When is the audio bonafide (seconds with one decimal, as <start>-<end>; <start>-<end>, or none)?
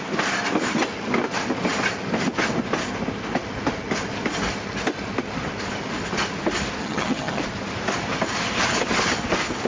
0.0-6.8; 7.4-9.7